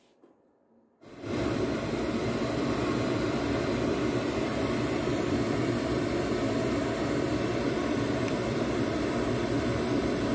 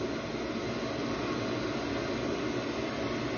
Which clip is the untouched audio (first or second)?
second